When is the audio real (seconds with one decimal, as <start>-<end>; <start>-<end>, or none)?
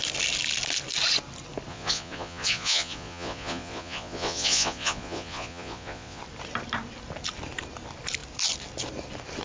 0.0-1.7; 6.2-9.4